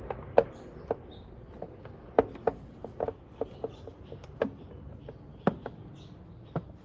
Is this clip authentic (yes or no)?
yes